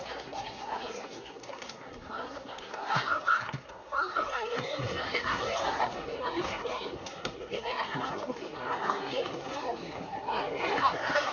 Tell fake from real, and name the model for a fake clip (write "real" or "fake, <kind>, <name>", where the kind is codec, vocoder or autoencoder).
fake, codec, SNAC